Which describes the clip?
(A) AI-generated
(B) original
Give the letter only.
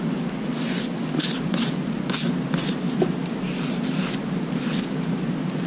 B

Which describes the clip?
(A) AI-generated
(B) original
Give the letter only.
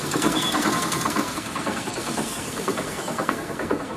A